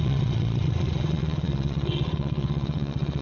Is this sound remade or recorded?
remade